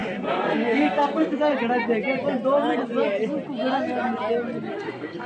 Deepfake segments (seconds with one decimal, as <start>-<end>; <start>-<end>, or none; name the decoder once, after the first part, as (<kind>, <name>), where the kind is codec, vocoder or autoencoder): 0.0-1.5 (codec, SNAC); 4.7-5.3